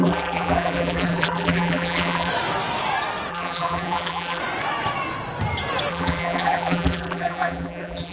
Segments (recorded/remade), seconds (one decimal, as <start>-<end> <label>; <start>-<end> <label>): 0.0-2.3 remade; 2.3-3.3 recorded; 3.3-4.4 remade; 4.4-5.9 recorded; 5.9-8.1 remade